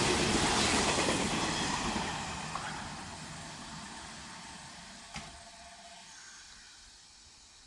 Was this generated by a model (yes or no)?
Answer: no